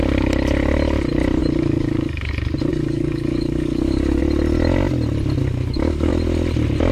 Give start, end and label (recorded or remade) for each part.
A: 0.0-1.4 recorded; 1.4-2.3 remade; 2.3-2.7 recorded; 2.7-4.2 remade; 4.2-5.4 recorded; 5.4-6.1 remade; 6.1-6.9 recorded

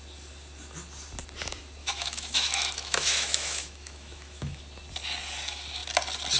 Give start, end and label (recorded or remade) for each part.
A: 0.0-1.8 recorded; 1.8-4.6 remade; 4.6-6.4 recorded

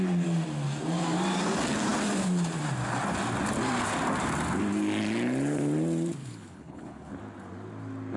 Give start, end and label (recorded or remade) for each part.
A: 0.0-6.2 recorded; 6.2-7.1 remade; 7.1-8.2 recorded

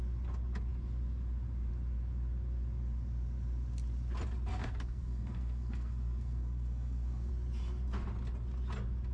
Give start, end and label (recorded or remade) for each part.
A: 0.0-4.5 recorded; 4.5-7.3 remade; 7.3-9.1 recorded

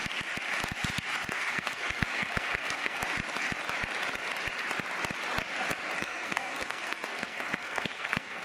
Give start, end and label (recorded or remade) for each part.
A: 0.0-1.3 recorded; 1.3-3.0 remade; 3.0-6.0 recorded; 6.0-8.4 remade